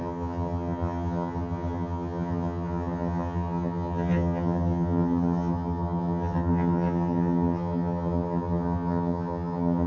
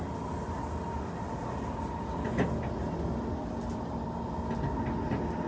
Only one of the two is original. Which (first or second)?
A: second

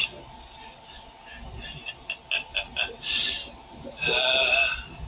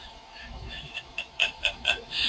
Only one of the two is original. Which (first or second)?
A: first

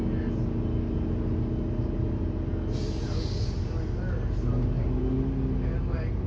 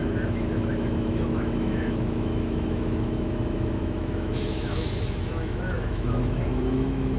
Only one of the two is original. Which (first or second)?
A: first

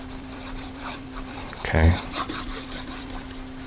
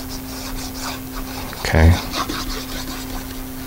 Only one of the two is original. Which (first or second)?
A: second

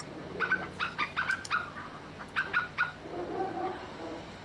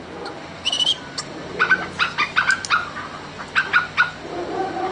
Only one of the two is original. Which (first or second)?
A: second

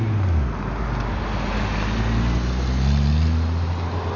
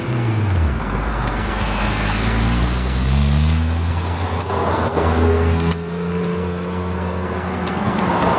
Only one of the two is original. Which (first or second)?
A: first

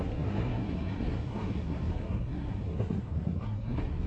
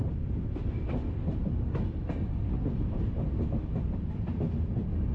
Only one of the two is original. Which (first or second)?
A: second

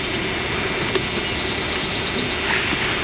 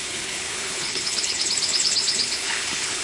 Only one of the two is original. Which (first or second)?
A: first